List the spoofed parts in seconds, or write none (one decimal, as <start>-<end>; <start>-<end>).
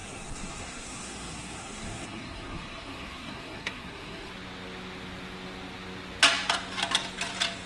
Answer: 0.0-4.3